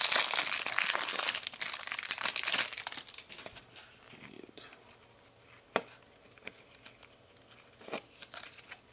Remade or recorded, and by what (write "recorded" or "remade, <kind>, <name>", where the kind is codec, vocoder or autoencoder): recorded